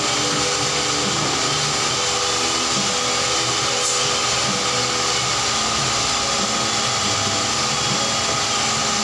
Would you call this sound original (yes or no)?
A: yes